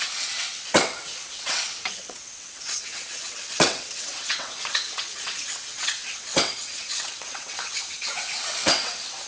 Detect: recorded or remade remade